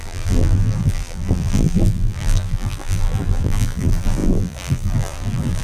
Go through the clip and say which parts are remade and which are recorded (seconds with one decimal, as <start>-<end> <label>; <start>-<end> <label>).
0.0-5.6 remade